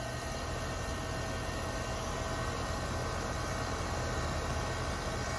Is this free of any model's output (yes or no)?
yes